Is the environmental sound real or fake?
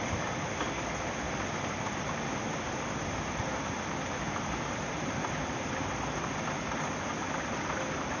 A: real